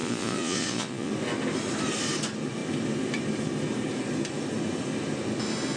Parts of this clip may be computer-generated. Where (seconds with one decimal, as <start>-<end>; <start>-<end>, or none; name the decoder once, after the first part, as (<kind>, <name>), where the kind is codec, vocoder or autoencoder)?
0.0-1.1 (vocoder, Vocos)